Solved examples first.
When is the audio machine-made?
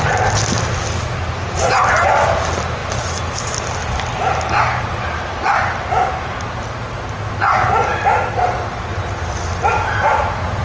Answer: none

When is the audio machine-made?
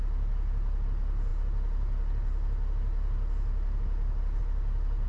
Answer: none